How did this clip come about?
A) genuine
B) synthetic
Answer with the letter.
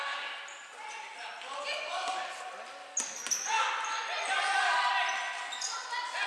A